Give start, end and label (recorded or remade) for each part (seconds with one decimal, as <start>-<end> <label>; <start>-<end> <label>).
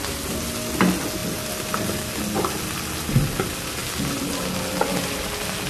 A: 0.0-1.2 recorded; 1.2-3.1 remade; 3.1-5.7 recorded